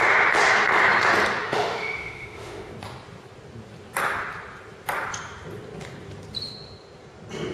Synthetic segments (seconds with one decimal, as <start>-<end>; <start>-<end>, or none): 1.4-2.7